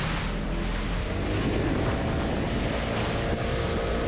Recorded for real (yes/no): yes